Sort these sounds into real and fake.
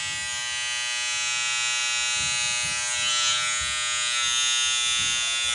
real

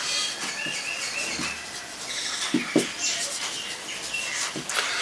real